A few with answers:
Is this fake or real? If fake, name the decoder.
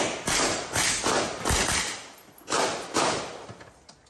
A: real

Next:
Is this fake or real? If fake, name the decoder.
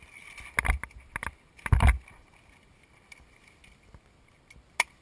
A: real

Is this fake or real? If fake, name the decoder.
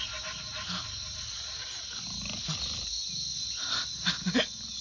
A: real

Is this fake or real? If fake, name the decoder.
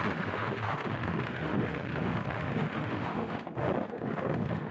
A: fake, autoencoder, DAC-VAE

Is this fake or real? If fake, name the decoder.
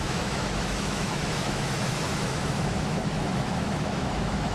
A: fake, autoencoder, DAC-VAE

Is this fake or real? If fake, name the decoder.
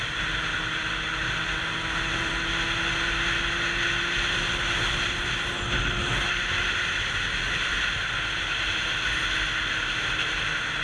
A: real